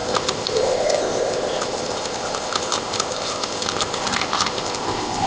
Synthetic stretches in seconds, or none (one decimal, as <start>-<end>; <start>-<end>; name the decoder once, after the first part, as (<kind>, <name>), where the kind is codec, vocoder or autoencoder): 0.0-5.3 (codec, ZipCodec)